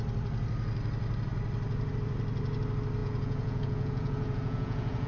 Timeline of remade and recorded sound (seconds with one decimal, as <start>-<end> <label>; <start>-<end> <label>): 0.0-3.0 recorded; 3.0-5.1 remade